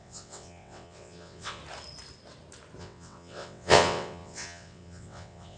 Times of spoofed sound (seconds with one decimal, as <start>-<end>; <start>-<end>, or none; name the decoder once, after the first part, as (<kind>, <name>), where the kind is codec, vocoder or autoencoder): 0.0-1.6 (vocoder, WaveNeXt); 2.8-5.6